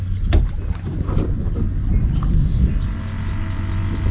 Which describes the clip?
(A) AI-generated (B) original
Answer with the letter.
B